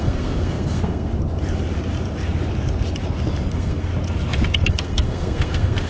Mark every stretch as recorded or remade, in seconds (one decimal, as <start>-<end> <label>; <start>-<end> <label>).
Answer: 0.0-1.1 remade; 1.1-3.5 recorded; 3.5-3.9 remade; 3.9-4.7 recorded; 4.7-5.9 remade